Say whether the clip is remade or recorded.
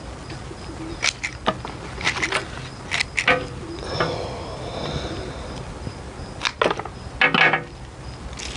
recorded